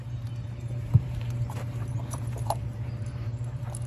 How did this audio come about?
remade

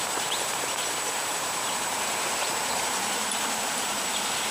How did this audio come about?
remade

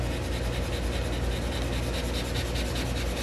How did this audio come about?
recorded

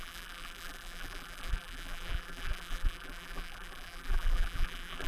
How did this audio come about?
remade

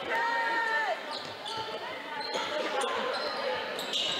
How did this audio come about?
remade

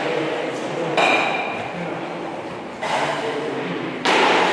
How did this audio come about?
remade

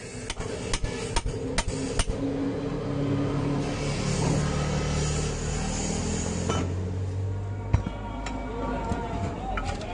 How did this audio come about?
recorded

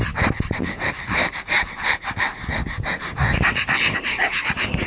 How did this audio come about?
remade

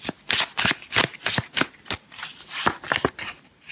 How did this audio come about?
recorded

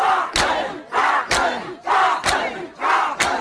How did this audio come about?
recorded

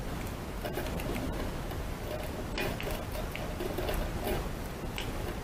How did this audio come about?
recorded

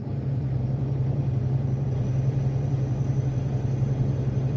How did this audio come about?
remade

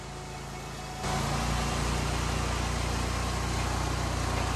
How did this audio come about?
recorded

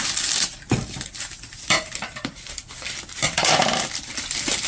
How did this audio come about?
remade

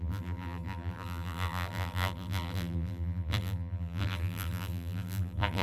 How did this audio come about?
remade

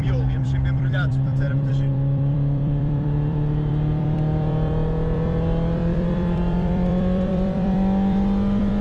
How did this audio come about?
remade